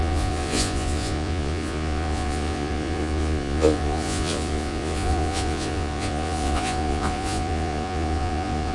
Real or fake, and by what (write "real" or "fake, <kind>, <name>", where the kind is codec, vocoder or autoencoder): fake, vocoder, Vocos